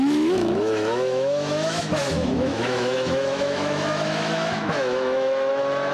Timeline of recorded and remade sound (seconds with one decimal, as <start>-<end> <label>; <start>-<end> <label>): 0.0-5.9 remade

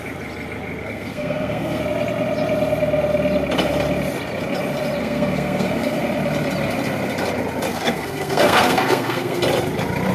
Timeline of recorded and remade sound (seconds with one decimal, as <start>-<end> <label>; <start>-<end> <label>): 0.0-0.8 recorded; 0.8-1.8 remade; 1.8-5.0 recorded; 5.0-6.0 remade; 6.0-7.7 recorded; 7.7-9.4 remade; 9.4-10.1 recorded

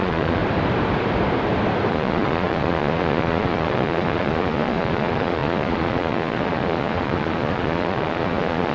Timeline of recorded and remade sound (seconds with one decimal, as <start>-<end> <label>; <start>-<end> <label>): 0.0-0.4 remade; 0.4-1.9 recorded; 1.9-8.7 remade